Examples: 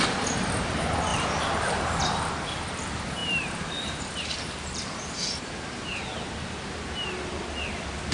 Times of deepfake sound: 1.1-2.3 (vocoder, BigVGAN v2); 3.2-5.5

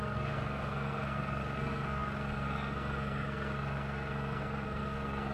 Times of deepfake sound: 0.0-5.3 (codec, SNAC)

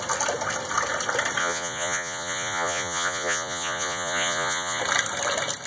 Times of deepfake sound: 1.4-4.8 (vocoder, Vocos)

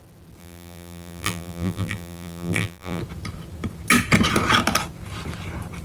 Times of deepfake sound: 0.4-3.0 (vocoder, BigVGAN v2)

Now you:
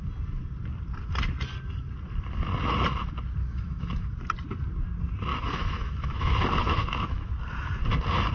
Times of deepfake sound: 3.4-4.1 (autoencoder, DAC-VAE); 5.3-7.3